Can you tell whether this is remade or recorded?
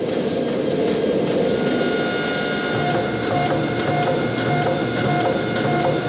recorded